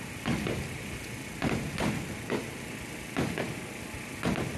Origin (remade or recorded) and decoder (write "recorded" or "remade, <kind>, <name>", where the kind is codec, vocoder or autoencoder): recorded